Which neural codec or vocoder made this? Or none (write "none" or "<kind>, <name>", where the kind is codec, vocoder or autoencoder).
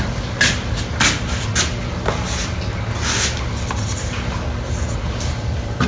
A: none